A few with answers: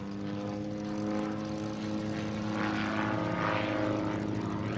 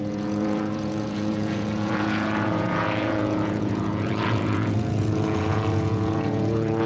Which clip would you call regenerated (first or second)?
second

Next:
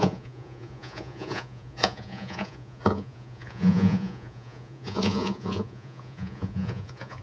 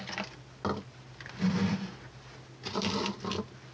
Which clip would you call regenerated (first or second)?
first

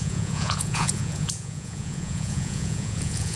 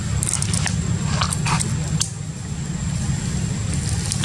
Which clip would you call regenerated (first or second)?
first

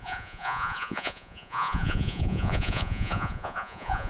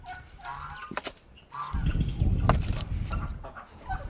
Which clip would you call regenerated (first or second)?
first